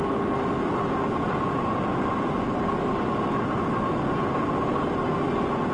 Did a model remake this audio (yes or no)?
no